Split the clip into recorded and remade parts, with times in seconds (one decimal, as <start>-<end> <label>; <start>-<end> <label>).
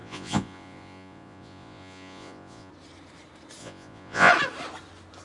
0.0-2.7 remade; 2.7-3.6 recorded; 3.6-4.3 remade; 4.3-5.2 recorded